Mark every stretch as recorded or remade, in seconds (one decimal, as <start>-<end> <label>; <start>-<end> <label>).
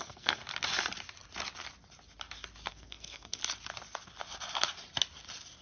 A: 0.0-0.4 remade; 0.4-2.7 recorded; 2.7-3.4 remade; 3.4-5.6 recorded